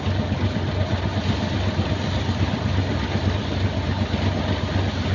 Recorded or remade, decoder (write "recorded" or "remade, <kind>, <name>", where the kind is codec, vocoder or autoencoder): recorded